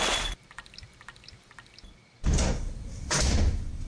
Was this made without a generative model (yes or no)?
yes